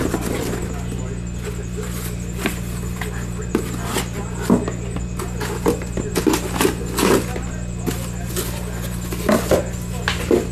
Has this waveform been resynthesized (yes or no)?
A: no